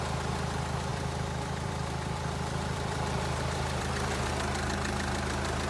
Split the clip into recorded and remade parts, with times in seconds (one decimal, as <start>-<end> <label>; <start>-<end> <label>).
0.0-0.9 recorded; 0.9-4.3 remade; 4.3-5.7 recorded